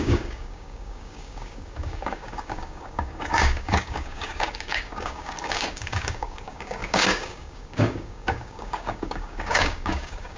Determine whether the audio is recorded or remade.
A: remade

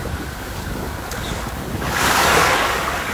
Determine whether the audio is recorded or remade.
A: remade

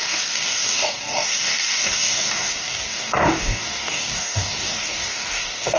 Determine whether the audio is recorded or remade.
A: remade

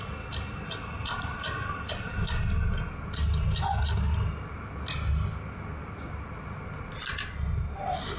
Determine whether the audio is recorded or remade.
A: recorded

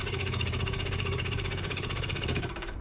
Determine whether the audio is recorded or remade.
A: remade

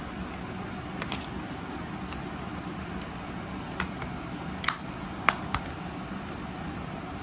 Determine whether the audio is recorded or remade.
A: recorded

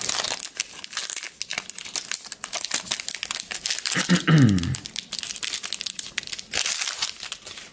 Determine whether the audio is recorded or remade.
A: recorded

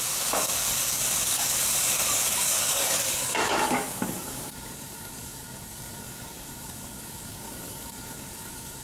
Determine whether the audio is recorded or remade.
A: remade